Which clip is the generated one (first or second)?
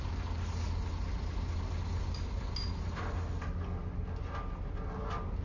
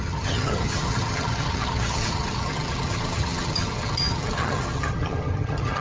second